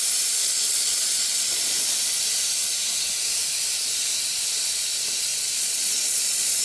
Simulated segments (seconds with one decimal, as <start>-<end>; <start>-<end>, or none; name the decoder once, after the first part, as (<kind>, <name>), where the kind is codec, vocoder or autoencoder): 0.4-2.2 (vocoder, Vocos); 5.3-6.6